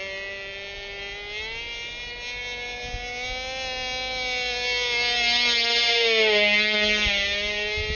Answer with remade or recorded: recorded